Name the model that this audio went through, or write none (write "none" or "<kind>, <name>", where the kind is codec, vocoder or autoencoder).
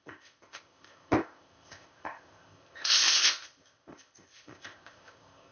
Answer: codec, ZipCodec